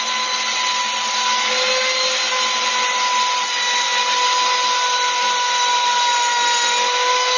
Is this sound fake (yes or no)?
no